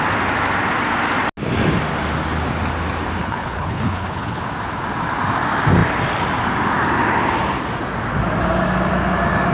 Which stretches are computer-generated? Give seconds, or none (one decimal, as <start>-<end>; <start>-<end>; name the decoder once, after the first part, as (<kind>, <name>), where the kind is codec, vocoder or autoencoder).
3.2-4.4 (codec, HILCodec)